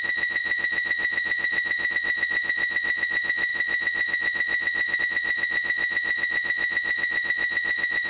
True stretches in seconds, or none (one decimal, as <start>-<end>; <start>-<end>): none